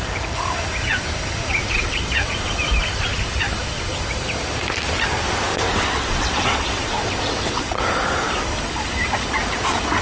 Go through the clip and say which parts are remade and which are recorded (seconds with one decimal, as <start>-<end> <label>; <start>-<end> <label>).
0.0-1.5 recorded; 1.5-2.5 remade; 2.5-5.5 recorded; 5.5-7.9 remade; 7.9-10.0 recorded